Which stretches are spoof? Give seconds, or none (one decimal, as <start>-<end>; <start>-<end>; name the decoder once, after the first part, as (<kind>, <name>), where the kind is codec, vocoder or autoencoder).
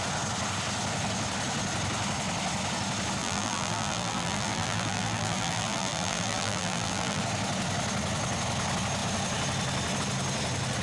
3.2-7.2 (vocoder, BigVGAN v2)